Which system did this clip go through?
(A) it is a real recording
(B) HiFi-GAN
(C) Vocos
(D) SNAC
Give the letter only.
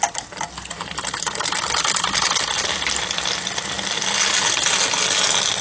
A